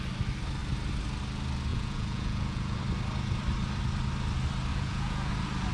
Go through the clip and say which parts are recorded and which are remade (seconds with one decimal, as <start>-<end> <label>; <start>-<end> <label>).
0.0-1.7 recorded; 1.7-2.8 remade; 2.8-4.7 recorded; 4.7-5.3 remade; 5.3-5.7 recorded